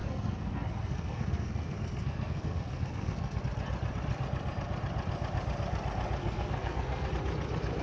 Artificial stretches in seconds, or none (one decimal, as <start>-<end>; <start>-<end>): 0.0-3.4; 6.2-7.1